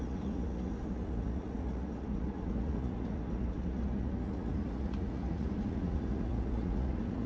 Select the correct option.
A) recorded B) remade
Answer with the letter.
B